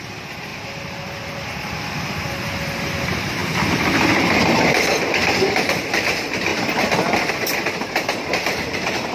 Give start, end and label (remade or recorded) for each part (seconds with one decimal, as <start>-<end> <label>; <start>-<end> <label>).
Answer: 0.0-3.4 remade; 3.4-4.2 recorded; 4.2-6.5 remade; 6.5-7.3 recorded; 7.3-9.1 remade

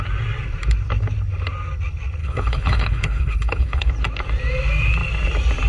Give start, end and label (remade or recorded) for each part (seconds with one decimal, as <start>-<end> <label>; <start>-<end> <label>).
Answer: 0.0-2.2 recorded; 2.2-3.9 remade; 3.9-5.7 recorded

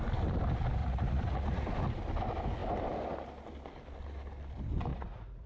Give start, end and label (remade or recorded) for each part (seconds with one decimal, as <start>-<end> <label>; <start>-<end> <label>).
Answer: 0.0-0.8 recorded; 0.8-1.7 remade; 1.7-4.9 recorded; 4.9-5.5 remade

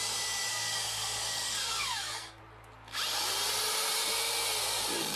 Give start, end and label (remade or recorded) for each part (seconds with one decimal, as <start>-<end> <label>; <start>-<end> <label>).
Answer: 0.0-0.5 recorded; 0.5-2.4 remade; 2.4-5.2 recorded